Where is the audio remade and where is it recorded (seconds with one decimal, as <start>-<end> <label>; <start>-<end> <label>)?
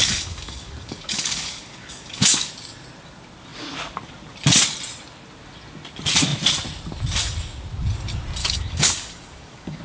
0.0-2.5 remade; 2.5-8.4 recorded; 8.4-9.8 remade